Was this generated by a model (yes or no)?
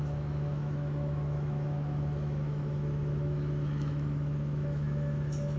yes